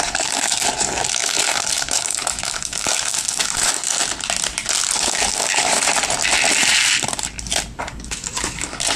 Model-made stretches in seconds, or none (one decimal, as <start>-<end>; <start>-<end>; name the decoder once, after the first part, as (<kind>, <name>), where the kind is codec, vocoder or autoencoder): 0.0-4.0 (codec, DAC); 5.0-5.9; 7.8-9.0